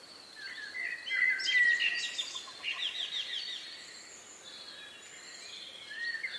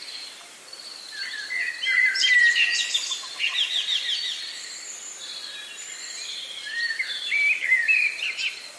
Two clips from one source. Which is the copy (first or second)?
second